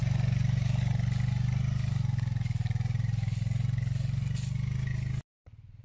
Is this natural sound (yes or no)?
yes